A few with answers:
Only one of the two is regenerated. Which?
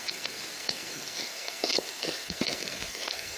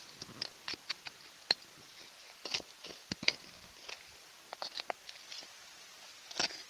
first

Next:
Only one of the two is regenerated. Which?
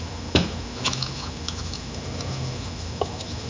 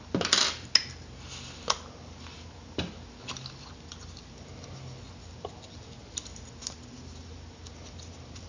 first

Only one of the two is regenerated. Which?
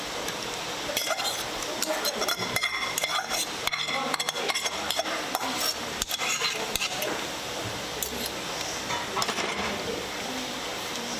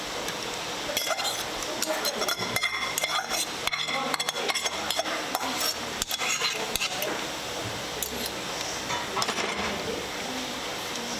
first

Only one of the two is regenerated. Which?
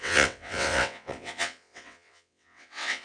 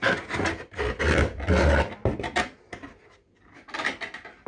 first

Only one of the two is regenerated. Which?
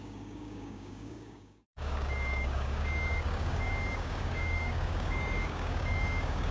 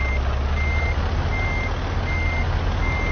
first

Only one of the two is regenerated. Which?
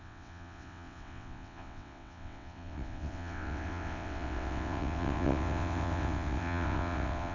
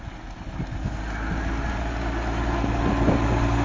first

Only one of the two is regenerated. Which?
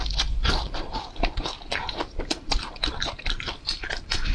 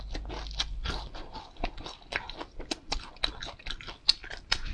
first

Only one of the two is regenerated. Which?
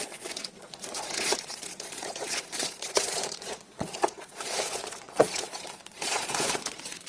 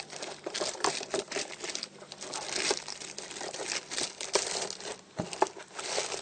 first